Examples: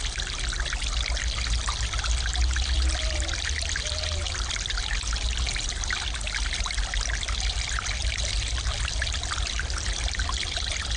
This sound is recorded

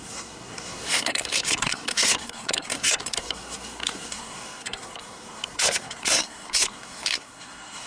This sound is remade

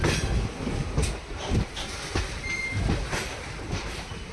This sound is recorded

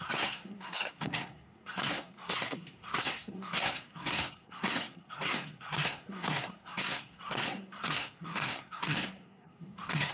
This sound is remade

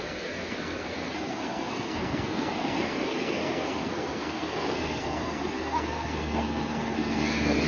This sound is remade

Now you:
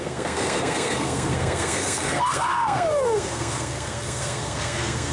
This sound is remade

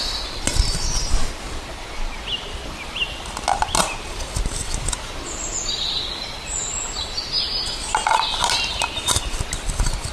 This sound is recorded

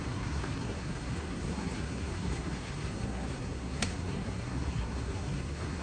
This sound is remade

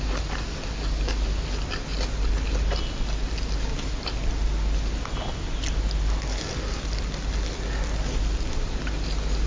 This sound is recorded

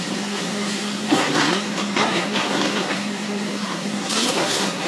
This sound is remade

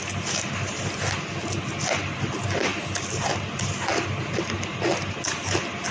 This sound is recorded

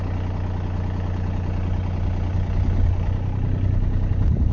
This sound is recorded